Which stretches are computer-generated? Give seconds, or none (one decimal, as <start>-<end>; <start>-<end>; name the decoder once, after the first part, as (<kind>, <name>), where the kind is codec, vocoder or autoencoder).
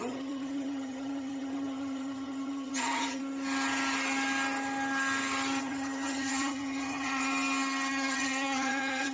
0.0-3.2 (vocoder, HiFi-GAN); 5.6-7.3; 7.9-9.1